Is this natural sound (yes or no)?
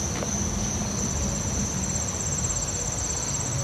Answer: yes